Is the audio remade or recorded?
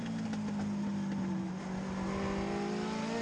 recorded